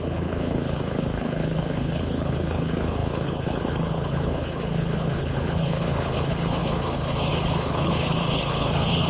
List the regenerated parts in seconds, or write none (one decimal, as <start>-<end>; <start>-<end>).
0.0-9.1